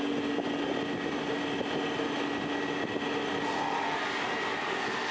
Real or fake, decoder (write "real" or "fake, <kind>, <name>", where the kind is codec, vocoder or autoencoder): real